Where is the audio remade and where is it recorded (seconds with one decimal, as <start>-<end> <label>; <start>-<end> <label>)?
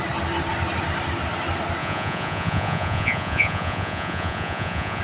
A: 0.0-1.8 recorded; 1.8-5.0 remade